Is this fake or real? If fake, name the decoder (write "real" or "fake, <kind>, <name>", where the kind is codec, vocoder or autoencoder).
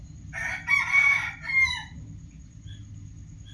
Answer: real